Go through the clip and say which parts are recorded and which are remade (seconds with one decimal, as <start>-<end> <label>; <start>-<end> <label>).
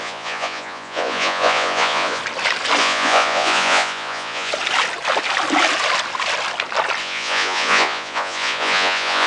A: 0.0-2.2 remade; 2.2-2.8 recorded; 2.8-4.5 remade; 4.5-7.0 recorded; 7.0-9.3 remade